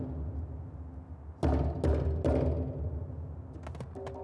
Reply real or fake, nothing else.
real